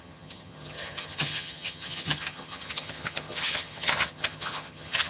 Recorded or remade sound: remade